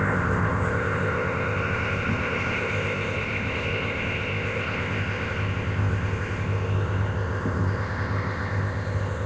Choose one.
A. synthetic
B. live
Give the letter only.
A